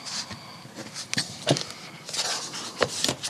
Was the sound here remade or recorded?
recorded